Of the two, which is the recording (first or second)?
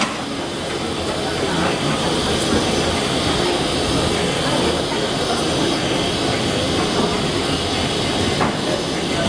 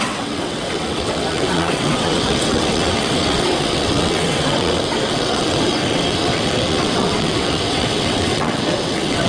first